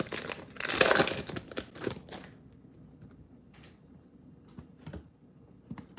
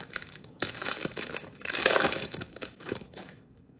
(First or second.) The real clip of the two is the first